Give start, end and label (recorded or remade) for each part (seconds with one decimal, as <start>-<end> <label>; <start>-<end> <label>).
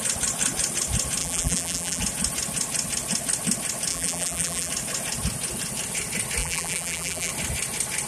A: 0.0-1.2 recorded; 1.2-2.0 remade; 2.0-3.9 recorded; 3.9-4.7 remade; 4.7-6.4 recorded; 6.4-7.3 remade; 7.3-8.1 recorded